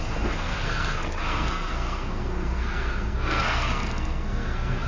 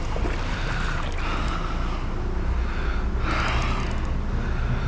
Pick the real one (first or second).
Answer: second